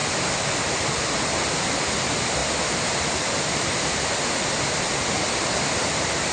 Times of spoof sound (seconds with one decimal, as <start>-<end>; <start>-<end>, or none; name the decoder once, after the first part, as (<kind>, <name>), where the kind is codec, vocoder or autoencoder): none